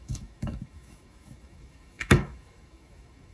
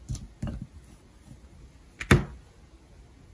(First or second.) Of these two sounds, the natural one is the second